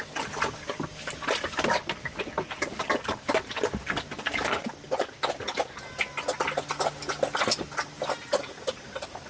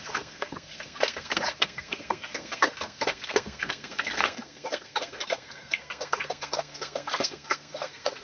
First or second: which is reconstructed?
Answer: second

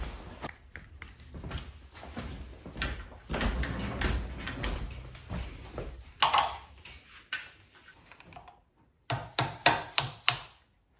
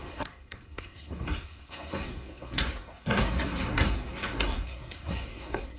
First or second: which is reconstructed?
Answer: second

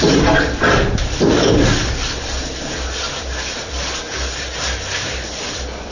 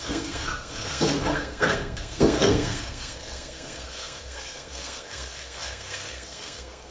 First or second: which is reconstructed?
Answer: second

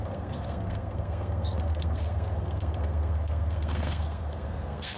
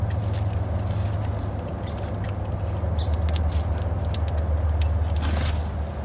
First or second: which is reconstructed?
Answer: first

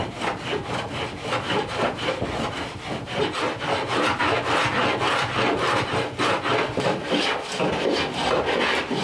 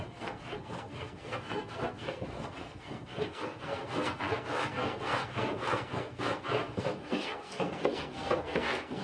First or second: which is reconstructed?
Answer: second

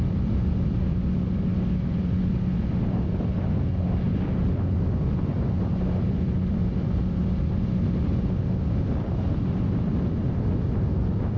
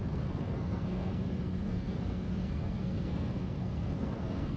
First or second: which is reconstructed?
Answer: second